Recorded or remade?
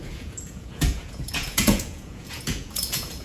remade